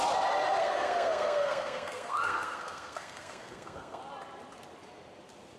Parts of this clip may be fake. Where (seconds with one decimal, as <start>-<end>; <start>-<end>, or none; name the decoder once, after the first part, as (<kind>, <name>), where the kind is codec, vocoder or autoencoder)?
0.6-4.0 (codec, SNAC)

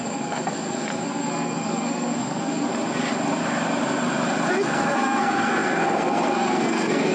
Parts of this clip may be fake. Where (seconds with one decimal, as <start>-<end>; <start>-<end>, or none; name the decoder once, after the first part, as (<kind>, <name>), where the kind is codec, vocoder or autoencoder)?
0.0-2.7 (codec, SNAC); 4.5-7.1

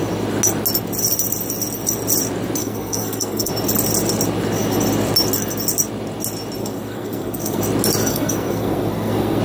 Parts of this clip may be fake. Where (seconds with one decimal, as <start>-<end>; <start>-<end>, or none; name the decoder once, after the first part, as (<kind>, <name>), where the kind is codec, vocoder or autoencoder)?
2.6-3.5 (codec, SNAC); 6.6-7.6; 8.1-9.4

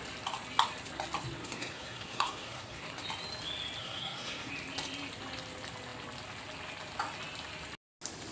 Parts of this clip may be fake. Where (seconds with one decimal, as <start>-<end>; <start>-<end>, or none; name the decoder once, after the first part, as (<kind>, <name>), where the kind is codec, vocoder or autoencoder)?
1.4-2.8 (codec, SNAC); 3.8-4.5

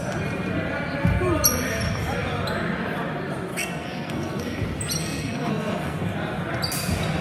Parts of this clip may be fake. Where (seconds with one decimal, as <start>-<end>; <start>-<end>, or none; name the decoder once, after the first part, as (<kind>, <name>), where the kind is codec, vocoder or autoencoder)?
3.5-4.6 (codec, SNAC); 5.0-6.1

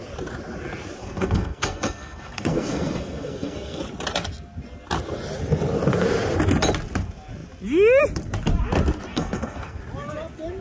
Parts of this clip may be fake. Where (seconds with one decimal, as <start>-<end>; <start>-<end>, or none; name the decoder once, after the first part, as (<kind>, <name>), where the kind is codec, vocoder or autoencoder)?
1.0-3.8 (codec, SNAC); 9.1-9.8